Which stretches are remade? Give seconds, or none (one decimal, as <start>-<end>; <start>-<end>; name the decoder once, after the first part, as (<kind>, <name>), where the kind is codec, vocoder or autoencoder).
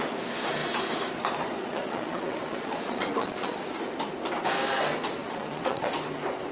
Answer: 1.6-3.6 (vocoder, Vocos); 5.2-5.9